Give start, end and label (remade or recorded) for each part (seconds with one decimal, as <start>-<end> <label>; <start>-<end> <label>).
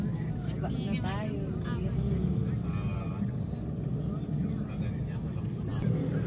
0.0-6.3 recorded